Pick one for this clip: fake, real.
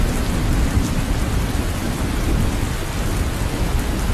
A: real